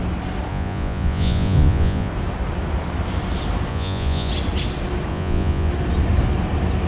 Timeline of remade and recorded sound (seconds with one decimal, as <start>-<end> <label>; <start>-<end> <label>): 0.0-0.5 recorded; 0.5-2.1 remade; 2.1-3.7 recorded; 3.7-4.3 remade; 4.3-5.1 recorded; 5.1-5.7 remade; 5.7-6.9 recorded